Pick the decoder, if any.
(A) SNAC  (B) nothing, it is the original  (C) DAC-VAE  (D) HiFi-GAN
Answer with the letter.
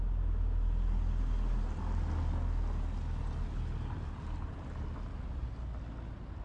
B